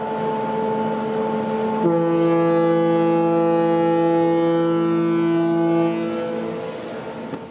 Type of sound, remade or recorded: recorded